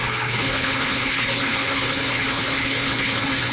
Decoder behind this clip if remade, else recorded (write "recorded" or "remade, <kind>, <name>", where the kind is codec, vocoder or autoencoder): remade, codec, HILCodec